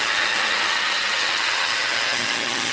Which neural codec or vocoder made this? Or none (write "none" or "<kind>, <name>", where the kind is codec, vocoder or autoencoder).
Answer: vocoder, HiFi-GAN